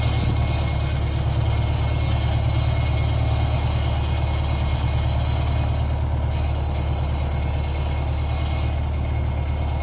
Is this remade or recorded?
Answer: recorded